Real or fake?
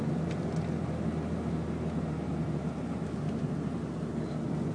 real